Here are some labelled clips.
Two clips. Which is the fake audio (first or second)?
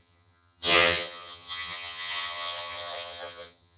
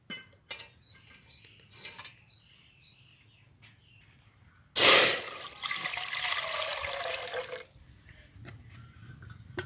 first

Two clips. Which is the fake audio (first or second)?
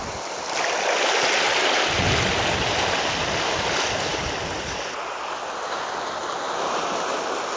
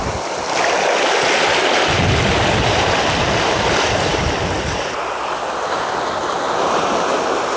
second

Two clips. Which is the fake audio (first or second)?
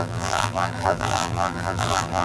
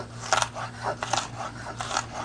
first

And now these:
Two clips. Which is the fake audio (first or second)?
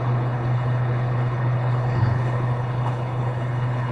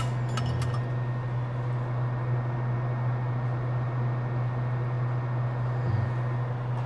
first